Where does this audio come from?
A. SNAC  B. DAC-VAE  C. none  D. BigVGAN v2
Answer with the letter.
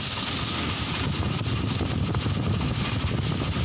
C